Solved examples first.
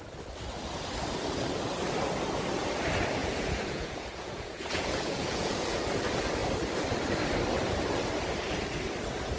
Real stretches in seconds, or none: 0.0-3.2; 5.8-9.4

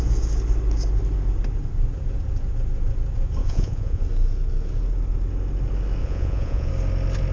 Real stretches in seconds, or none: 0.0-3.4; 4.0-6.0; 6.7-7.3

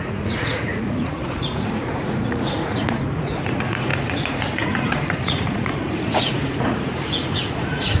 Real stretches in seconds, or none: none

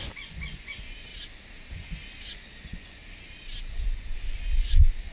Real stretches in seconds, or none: 1.1-1.7; 3.0-3.7